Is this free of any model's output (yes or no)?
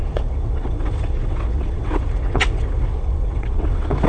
no